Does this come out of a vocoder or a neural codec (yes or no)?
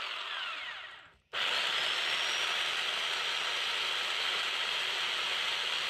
no